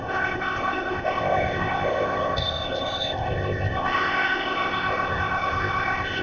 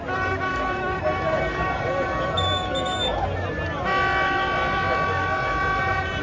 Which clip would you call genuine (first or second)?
second